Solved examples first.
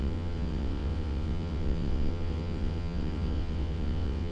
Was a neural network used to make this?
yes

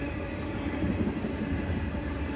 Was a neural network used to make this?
no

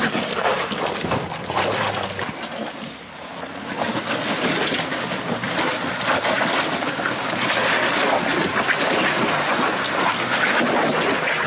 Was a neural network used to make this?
no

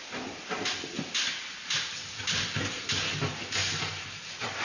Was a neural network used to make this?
no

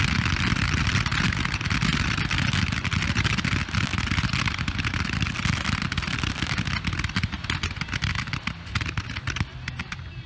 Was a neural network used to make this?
no